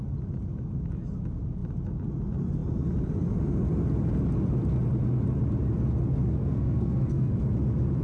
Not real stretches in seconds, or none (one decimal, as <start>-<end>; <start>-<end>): 6.4-7.3